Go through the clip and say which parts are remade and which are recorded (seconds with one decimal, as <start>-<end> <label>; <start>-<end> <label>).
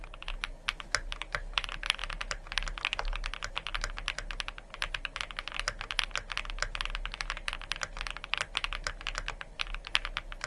0.0-10.5 recorded